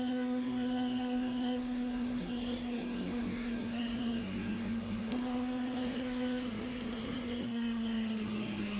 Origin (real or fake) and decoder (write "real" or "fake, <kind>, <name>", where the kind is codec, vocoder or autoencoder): fake, codec, SNAC